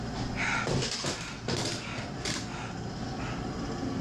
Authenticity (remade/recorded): recorded